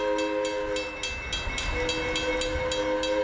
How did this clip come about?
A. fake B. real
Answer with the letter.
B